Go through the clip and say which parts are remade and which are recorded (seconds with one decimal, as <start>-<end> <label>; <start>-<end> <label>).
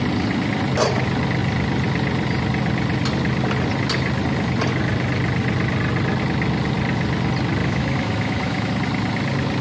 0.0-7.6 recorded; 7.6-8.7 remade; 8.7-9.6 recorded